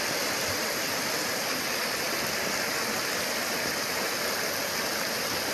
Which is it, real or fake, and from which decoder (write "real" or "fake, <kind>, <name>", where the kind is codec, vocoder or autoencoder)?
real